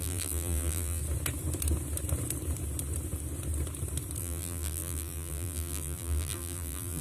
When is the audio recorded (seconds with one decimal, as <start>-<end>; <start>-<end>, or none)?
1.0-4.2